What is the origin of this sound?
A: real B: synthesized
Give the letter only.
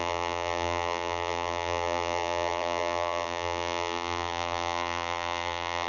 B